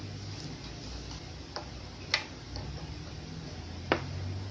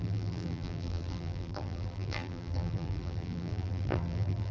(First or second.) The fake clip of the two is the second